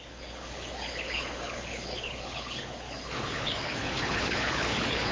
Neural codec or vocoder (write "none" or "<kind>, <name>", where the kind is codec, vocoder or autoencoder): codec, HILCodec